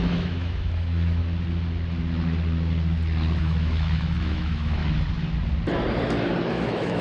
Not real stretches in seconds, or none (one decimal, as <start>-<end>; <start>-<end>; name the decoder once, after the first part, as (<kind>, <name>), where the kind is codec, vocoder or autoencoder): 0.0-1.2 (autoencoder, DAC-VAE); 3.4-4.8; 6.5-7.0